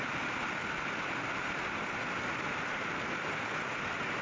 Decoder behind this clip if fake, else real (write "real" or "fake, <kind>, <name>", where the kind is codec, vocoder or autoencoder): real